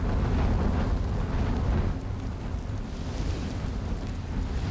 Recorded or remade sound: recorded